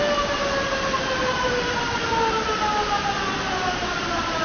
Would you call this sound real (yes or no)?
yes